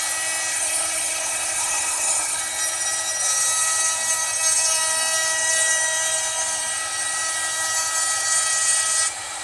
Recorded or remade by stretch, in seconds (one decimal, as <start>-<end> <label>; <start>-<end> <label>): 0.0-0.5 recorded; 0.5-2.4 remade; 2.4-9.4 recorded